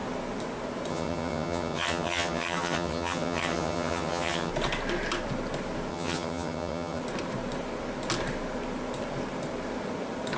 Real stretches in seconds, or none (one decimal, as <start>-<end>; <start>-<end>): 0.0-0.9; 4.5-5.9; 7.0-10.4